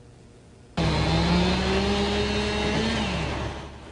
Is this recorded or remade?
recorded